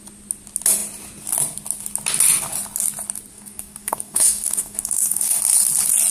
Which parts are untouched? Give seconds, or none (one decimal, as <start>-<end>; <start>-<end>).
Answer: 0.0-3.3; 5.4-6.1